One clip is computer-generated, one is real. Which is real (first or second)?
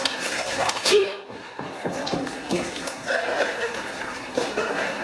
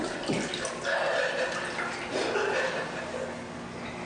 second